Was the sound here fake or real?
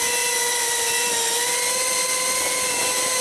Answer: real